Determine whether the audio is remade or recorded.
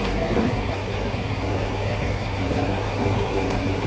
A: remade